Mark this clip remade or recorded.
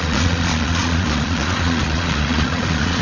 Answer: remade